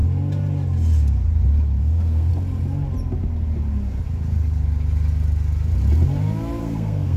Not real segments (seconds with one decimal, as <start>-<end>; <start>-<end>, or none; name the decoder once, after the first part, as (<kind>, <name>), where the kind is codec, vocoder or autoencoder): 1.8-2.3 (codec, SNAC); 6.6-7.2